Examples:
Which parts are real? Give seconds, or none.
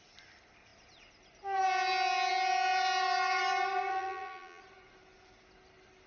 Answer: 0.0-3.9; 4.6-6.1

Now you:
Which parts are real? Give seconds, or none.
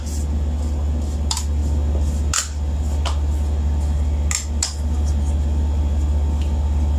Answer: 0.0-7.0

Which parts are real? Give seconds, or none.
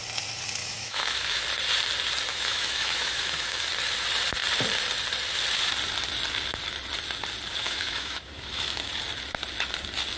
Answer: 0.0-0.6; 1.4-2.3; 3.7-7.6; 8.9-10.2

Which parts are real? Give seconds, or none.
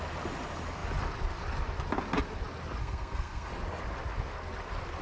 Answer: 0.0-2.8; 3.5-5.0